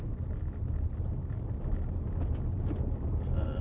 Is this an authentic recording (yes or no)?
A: yes